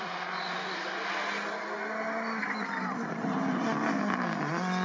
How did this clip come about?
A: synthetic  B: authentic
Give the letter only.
B